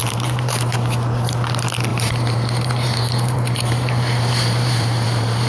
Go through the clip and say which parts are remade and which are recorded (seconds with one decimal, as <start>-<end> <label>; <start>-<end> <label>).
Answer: 0.0-0.5 remade; 0.5-1.9 recorded; 1.9-5.5 remade